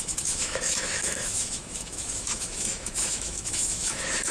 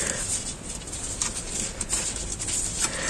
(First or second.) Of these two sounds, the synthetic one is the first